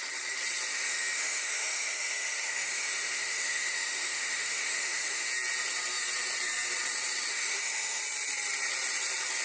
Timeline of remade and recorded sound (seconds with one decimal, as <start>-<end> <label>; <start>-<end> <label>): 0.0-0.7 recorded; 0.7-5.3 remade; 5.3-7.3 recorded; 7.3-8.0 remade; 8.0-9.4 recorded